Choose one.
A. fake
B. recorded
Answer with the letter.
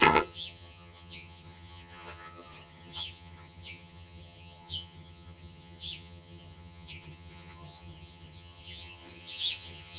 A